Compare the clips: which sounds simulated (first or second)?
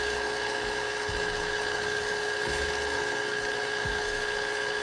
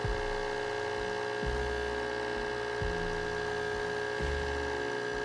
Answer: first